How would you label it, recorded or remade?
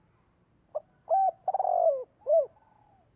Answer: recorded